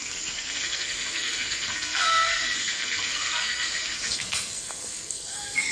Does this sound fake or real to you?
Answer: fake